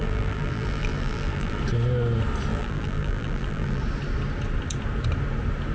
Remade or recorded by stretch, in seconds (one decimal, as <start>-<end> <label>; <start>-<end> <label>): 0.0-1.6 remade; 1.6-2.5 recorded; 2.5-3.8 remade; 3.8-5.7 recorded